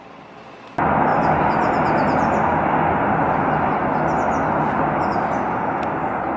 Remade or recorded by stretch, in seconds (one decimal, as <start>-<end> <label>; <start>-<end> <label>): 0.0-6.4 recorded